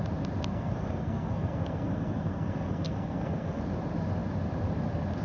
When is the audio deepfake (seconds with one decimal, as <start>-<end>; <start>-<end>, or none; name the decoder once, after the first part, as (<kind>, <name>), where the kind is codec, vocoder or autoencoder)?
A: 0.5-3.6 (codec, SNAC)